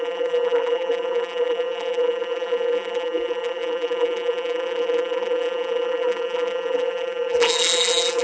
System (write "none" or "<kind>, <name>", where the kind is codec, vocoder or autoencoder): vocoder, BigVGAN v2